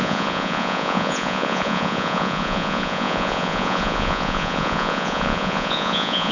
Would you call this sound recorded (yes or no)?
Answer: no